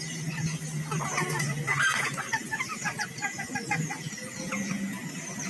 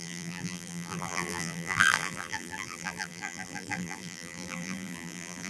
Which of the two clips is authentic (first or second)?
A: first